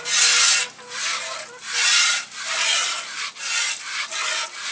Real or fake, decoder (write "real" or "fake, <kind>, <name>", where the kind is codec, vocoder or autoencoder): real